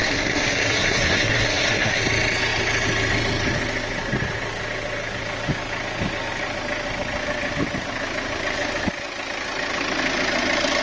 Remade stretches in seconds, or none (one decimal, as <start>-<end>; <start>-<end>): 0.0-2.0